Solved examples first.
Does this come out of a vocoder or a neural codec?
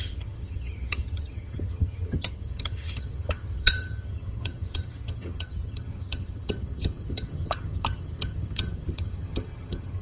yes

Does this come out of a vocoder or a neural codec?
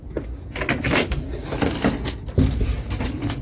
no